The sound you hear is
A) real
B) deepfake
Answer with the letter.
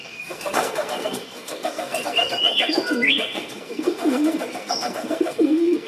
B